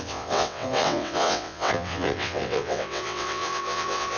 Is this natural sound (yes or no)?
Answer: no